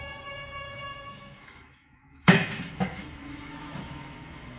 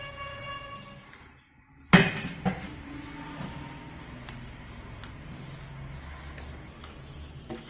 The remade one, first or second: first